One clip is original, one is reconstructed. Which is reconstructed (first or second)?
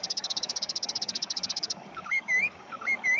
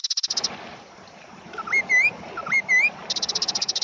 first